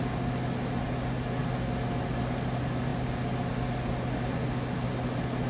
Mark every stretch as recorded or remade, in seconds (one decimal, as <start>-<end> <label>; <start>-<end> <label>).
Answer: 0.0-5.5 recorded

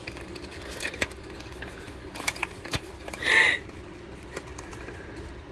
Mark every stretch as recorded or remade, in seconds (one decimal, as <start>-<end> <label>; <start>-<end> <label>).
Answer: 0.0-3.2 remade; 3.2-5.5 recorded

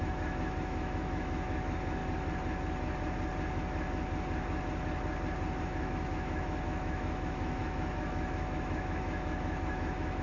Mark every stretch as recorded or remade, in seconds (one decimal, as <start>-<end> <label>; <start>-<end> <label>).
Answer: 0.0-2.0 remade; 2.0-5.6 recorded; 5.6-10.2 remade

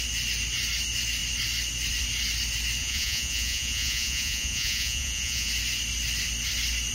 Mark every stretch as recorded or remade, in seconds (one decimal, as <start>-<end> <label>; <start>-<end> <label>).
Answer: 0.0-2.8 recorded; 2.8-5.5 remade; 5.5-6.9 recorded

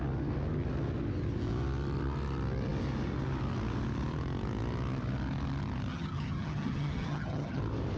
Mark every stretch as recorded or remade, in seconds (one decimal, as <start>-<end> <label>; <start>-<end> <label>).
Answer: 0.0-5.9 recorded; 5.9-7.6 remade; 7.6-8.0 recorded

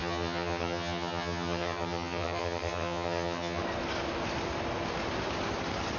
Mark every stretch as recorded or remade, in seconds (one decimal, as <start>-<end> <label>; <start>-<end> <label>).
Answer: 0.0-3.6 remade; 3.6-6.0 recorded

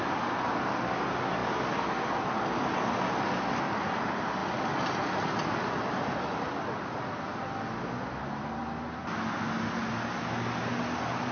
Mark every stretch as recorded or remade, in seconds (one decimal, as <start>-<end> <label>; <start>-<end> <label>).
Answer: 0.0-11.3 recorded

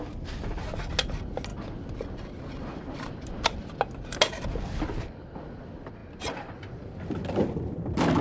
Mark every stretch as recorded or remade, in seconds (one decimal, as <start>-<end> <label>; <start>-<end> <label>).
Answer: 0.0-8.2 recorded